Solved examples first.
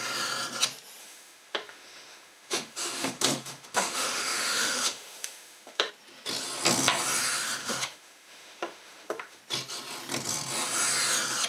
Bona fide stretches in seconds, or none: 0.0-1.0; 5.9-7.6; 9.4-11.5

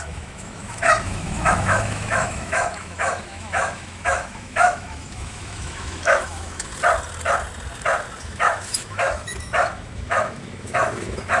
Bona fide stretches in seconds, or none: 6.7-8.2

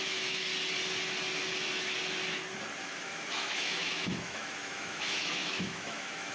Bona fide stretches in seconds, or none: 0.5-2.8

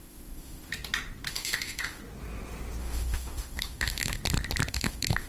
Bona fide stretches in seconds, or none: 0.7-1.3; 2.0-2.8; 4.2-4.7